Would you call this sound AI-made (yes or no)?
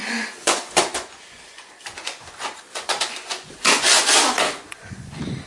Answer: yes